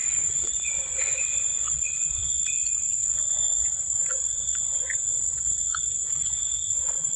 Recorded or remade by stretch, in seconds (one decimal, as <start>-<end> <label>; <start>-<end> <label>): 0.0-7.2 remade